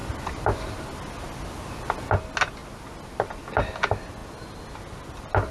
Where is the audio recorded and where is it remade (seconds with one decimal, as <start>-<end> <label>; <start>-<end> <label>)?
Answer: 0.0-5.5 recorded